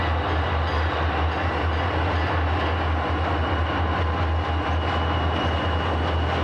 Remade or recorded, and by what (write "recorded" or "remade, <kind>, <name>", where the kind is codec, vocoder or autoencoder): recorded